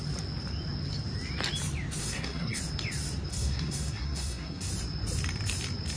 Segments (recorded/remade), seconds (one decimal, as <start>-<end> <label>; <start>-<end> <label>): 0.0-2.0 recorded; 2.0-2.6 remade; 2.6-3.3 recorded; 3.3-4.7 remade; 4.7-6.0 recorded